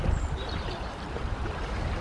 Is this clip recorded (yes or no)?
no